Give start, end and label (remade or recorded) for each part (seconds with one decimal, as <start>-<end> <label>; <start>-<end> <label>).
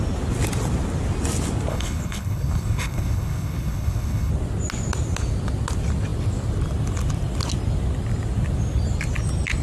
0.0-1.7 recorded; 1.7-4.3 remade; 4.3-9.6 recorded